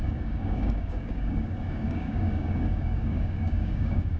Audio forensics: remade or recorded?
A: remade